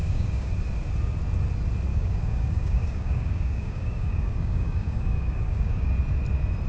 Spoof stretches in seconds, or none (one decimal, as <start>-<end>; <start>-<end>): 0.0-0.5; 1.9-5.9